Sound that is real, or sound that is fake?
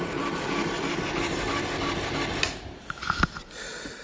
real